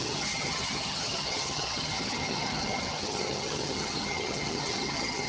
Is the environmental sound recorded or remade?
remade